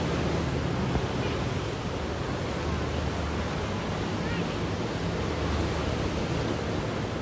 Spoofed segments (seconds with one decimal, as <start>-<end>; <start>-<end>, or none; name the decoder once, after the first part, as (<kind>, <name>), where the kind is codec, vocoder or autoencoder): none